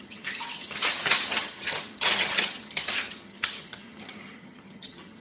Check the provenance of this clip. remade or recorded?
remade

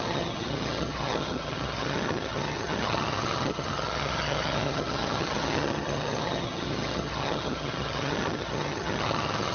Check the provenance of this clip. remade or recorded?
remade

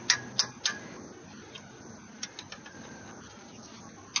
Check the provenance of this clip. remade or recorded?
recorded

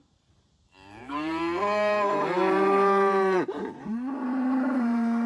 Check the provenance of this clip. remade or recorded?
remade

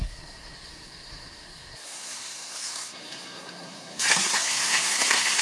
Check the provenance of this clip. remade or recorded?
remade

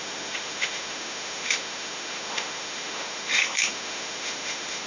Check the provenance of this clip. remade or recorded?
remade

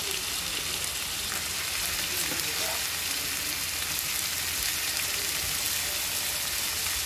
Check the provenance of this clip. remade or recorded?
recorded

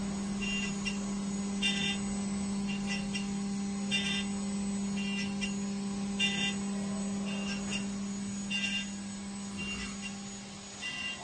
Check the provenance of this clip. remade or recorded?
recorded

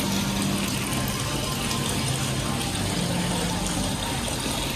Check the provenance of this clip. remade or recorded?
recorded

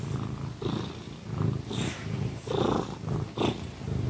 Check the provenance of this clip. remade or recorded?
recorded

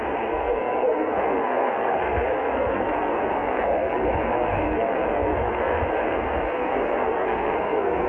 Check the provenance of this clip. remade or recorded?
remade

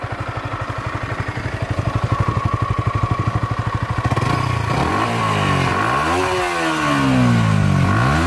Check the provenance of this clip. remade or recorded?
recorded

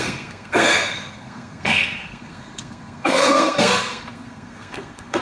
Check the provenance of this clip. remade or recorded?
remade